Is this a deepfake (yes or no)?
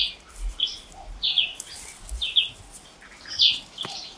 no